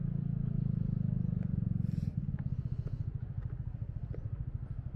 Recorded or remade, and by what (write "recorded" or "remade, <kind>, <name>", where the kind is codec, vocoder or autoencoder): recorded